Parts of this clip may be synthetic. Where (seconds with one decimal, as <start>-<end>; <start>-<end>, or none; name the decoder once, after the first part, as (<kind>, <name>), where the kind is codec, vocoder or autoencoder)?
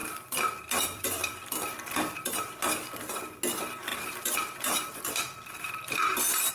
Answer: 0.0-2.6 (vocoder, BigVGAN v2); 3.9-6.5